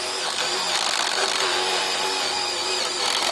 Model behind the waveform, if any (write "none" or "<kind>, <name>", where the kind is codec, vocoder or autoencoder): none